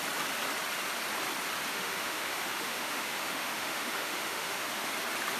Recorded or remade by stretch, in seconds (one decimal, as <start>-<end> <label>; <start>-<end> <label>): 0.0-1.7 recorded; 1.7-4.9 remade; 4.9-5.4 recorded